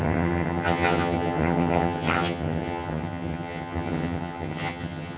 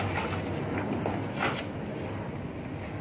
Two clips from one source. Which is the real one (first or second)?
second